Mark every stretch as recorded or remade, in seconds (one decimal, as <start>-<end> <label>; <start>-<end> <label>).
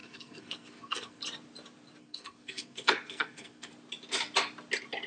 0.0-1.2 remade; 1.2-2.0 recorded; 2.0-3.7 remade; 3.7-5.1 recorded